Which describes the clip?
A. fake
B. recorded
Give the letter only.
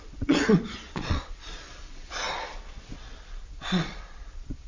A